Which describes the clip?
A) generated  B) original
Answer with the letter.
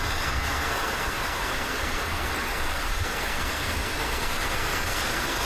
A